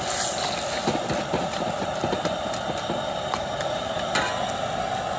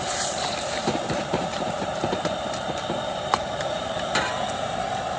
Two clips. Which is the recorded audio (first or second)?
first